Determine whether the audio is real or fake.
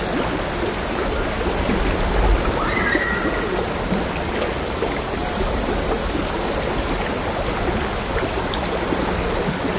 real